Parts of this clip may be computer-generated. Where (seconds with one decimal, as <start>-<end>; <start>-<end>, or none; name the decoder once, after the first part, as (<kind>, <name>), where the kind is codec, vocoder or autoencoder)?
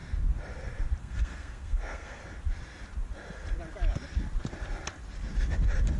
1.0-2.2 (codec, SNAC)